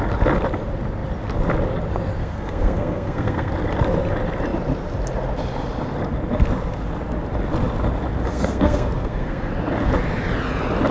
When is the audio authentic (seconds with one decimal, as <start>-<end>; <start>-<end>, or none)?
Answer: 0.0-2.2; 3.5-8.3; 9.5-10.9